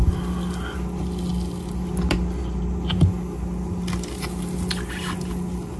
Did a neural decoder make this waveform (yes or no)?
no